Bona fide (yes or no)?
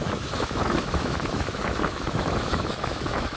no